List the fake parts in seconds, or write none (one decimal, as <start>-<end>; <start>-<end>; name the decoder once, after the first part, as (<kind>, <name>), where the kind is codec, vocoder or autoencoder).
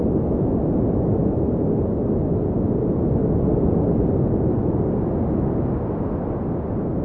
none